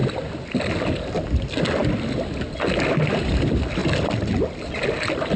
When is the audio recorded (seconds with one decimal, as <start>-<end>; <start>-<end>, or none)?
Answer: 0.0-5.4